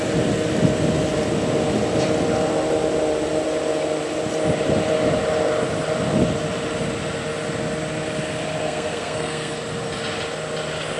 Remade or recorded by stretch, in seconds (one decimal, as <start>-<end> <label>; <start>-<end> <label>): 0.0-8.6 recorded; 8.6-9.5 remade; 9.5-11.0 recorded